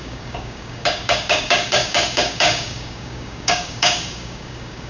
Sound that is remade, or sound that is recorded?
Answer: remade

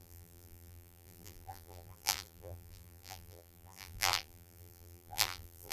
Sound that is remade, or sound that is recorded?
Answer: remade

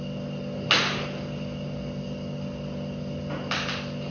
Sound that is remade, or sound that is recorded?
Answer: recorded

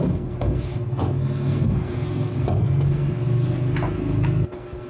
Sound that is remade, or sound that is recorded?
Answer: remade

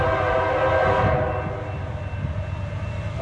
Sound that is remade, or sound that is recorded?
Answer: recorded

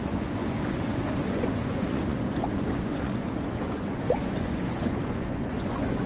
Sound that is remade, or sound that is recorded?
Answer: remade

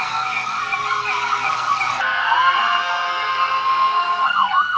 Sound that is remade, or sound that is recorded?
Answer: remade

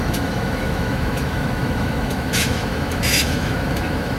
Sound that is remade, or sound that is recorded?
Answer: remade